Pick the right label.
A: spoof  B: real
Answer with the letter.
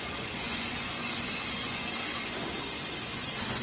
A